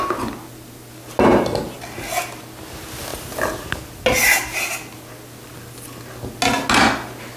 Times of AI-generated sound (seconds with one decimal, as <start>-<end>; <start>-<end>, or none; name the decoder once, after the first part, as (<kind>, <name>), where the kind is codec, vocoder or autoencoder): none